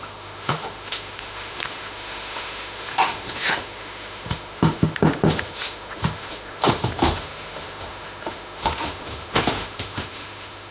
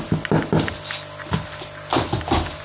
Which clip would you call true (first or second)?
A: second